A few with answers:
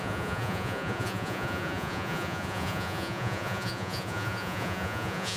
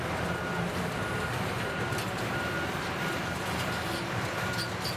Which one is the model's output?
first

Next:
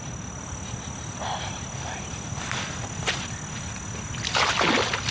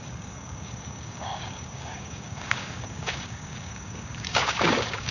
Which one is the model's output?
second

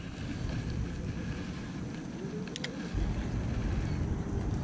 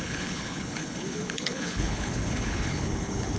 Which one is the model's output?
second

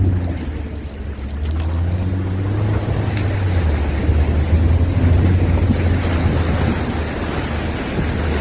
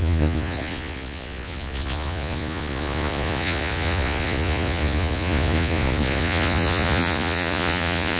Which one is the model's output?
second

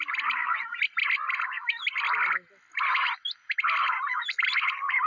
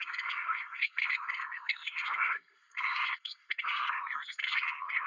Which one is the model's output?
second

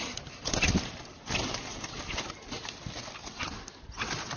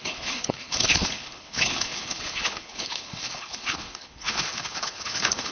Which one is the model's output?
second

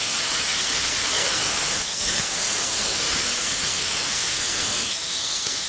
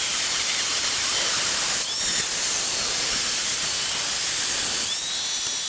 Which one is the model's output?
first